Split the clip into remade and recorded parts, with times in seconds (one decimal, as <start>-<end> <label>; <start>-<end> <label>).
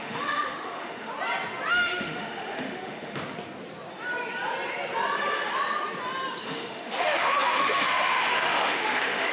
0.0-1.1 remade; 1.1-1.7 recorded; 1.7-3.2 remade; 3.2-6.4 recorded; 6.4-9.3 remade